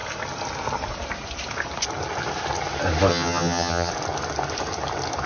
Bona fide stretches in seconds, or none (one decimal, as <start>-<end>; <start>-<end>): 0.0-3.1; 3.9-5.3